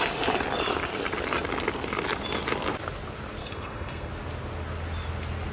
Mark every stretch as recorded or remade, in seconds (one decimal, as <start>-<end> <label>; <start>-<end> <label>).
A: 0.0-3.4 recorded; 3.4-4.1 remade; 4.1-5.5 recorded